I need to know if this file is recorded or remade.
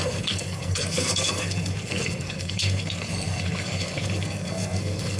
remade